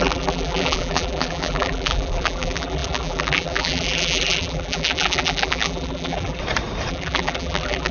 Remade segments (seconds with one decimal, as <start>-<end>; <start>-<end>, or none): 0.0-6.4; 6.9-7.9